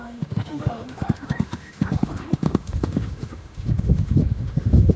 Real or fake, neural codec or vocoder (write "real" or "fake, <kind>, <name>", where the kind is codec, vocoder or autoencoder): fake, autoencoder, DAC-VAE